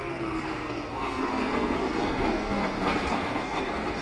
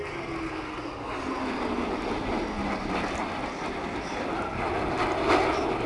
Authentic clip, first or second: second